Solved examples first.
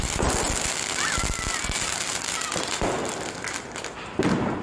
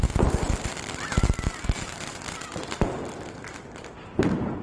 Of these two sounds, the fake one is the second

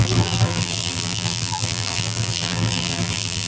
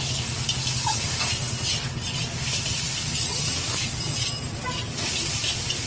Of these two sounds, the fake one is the first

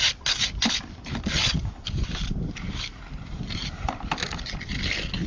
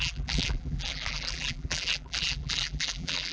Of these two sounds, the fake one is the second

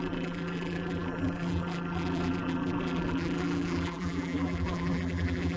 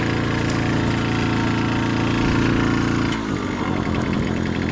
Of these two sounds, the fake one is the first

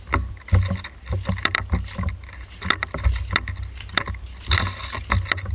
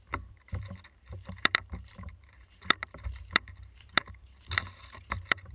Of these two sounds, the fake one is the second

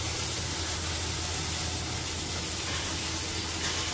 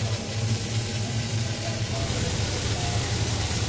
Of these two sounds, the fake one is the second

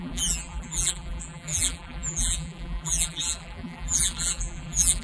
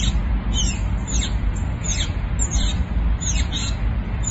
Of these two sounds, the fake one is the first